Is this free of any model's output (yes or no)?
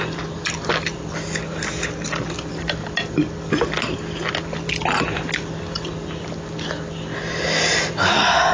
yes